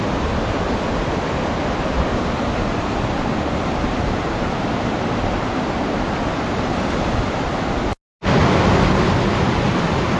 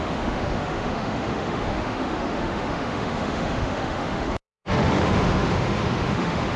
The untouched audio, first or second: first